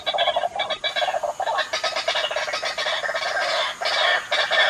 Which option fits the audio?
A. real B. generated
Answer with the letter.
A